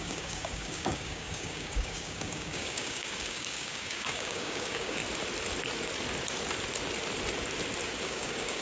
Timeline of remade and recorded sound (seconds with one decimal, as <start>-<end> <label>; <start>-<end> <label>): 0.0-5.0 remade; 5.0-8.0 recorded; 8.0-8.6 remade